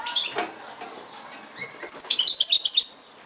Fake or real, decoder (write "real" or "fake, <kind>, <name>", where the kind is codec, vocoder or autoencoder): real